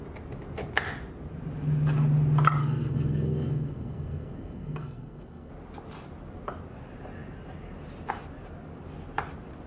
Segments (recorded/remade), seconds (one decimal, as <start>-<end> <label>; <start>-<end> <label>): 0.0-2.6 recorded; 2.6-5.5 remade; 5.5-9.7 recorded